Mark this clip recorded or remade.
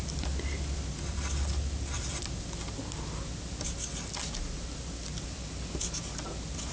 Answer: recorded